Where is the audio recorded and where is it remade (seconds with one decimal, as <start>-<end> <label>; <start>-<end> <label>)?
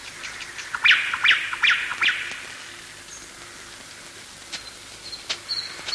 0.0-5.9 recorded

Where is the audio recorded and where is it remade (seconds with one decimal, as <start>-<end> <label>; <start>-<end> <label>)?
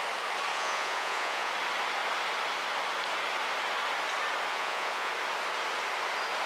0.0-0.5 recorded; 0.5-1.5 remade; 1.5-4.5 recorded; 4.5-5.1 remade; 5.1-6.5 recorded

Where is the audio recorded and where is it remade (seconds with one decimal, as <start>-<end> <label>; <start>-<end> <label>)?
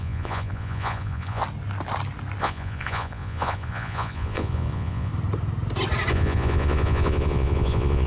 0.0-1.4 remade; 1.4-2.4 recorded; 2.4-5.1 remade; 5.1-6.1 recorded; 6.1-8.1 remade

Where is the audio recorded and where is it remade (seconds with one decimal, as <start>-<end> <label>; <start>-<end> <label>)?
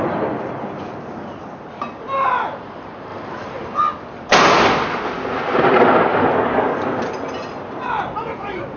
0.0-6.1 recorded; 6.1-7.0 remade; 7.0-8.8 recorded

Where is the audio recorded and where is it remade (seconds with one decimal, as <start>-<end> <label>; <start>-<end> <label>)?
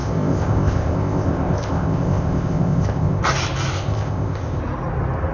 0.0-3.2 remade; 3.2-3.7 recorded; 3.7-4.6 remade; 4.6-5.3 recorded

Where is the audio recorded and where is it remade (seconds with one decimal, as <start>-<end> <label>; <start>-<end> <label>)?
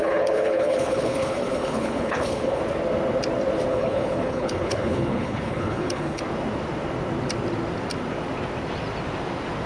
0.0-2.6 remade; 2.6-3.7 recorded; 3.7-6.2 remade; 6.2-9.7 recorded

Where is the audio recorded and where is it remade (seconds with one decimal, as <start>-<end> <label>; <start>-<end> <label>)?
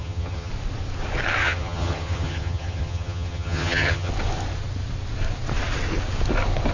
0.0-0.5 remade; 0.5-1.4 recorded; 1.4-4.1 remade; 4.1-6.7 recorded